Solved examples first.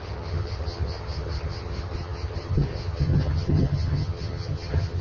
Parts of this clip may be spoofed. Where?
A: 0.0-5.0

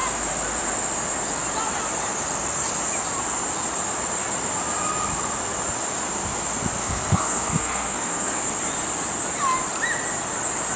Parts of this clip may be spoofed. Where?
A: 6.8-8.4

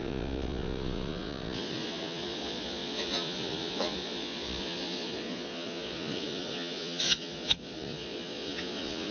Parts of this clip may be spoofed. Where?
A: 0.0-9.1

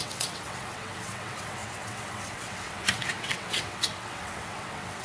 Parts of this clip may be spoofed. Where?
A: 0.0-5.0

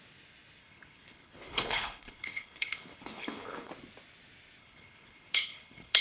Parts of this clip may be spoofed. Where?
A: 0.6-3.7; 4.6-6.0